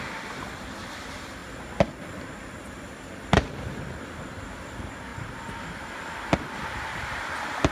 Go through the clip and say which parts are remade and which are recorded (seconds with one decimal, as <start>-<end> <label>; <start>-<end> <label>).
0.0-5.1 recorded; 5.1-5.9 remade; 5.9-7.7 recorded